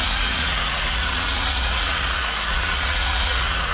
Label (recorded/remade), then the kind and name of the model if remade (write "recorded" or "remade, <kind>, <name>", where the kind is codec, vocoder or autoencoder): remade, vocoder, Vocos